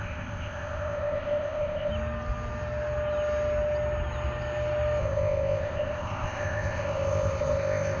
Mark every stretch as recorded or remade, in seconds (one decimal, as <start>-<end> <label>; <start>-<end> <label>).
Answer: 0.0-1.9 remade; 1.9-5.0 recorded; 5.0-8.0 remade